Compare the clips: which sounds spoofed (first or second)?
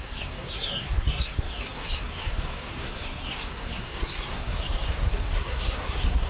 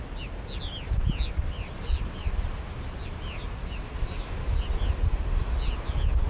first